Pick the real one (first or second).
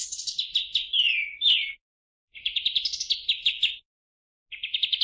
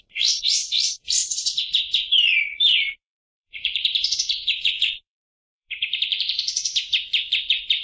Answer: first